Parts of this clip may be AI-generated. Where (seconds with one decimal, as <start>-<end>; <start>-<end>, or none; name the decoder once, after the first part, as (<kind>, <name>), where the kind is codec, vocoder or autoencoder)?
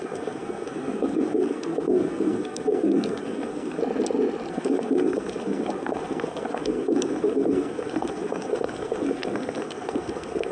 0.0-3.8 (codec, SNAC); 4.5-10.5